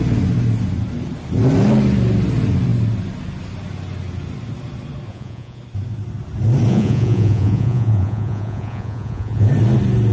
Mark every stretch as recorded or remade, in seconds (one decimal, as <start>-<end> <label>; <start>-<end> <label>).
0.0-5.1 recorded; 5.1-5.6 remade; 5.6-6.7 recorded; 6.7-9.5 remade; 9.5-10.1 recorded